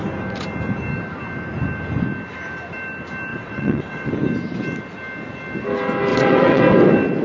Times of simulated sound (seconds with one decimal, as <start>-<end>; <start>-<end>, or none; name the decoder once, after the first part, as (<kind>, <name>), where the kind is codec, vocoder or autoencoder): 3.3-4.1 (vocoder, WaveNeXt); 6.1-6.6